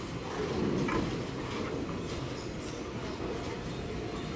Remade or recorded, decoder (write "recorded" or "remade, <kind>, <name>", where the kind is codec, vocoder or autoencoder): recorded